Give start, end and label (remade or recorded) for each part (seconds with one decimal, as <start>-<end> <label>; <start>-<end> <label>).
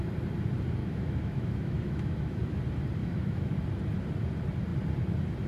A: 0.0-0.8 recorded; 0.8-2.6 remade; 2.6-3.0 recorded; 3.0-3.5 remade; 3.5-5.5 recorded